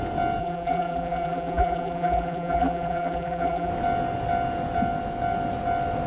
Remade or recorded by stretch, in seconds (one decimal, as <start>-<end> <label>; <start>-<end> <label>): 0.0-0.4 recorded; 0.4-3.7 remade; 3.7-6.1 recorded